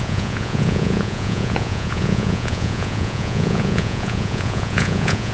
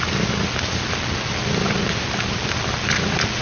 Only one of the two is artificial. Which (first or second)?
first